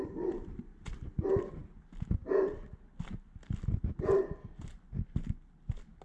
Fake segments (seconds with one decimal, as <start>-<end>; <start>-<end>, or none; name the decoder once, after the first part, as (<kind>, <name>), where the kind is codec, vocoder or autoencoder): none